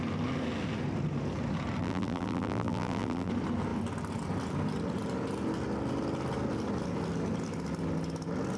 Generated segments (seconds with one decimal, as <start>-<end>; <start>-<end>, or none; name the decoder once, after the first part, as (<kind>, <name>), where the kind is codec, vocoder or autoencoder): 1.8-3.3 (vocoder, BigVGAN v2)